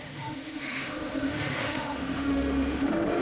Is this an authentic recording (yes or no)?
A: no